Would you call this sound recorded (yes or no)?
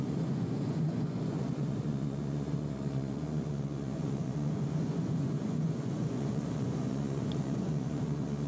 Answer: no